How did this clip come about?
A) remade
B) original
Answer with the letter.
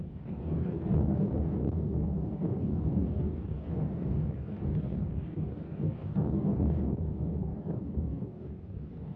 A